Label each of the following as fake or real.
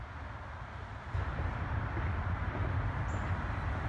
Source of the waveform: real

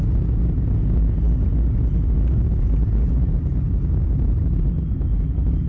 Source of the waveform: real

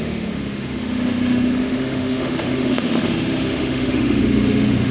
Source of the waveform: fake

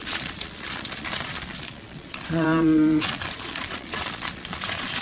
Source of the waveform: fake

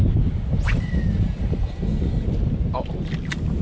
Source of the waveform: real